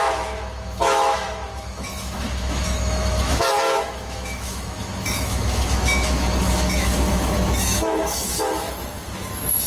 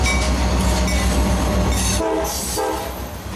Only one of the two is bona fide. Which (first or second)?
second